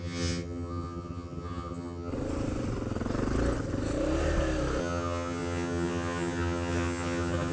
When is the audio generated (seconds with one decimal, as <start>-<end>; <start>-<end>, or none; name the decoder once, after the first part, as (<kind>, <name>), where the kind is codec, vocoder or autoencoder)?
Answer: 0.0-2.1 (vocoder, HiFi-GAN); 4.8-7.5

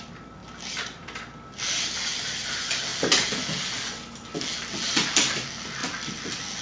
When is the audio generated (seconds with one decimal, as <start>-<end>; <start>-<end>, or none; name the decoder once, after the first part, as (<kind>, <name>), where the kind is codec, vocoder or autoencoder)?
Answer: none

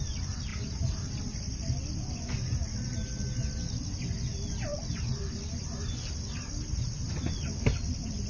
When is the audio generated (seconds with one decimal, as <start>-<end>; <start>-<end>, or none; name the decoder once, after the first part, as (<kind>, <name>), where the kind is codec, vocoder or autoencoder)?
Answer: none